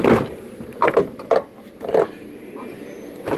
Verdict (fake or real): real